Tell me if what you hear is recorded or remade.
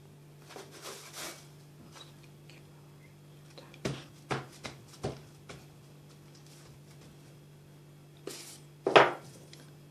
recorded